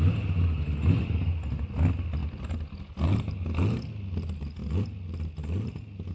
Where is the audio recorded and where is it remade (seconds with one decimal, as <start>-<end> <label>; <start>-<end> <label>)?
0.0-6.1 recorded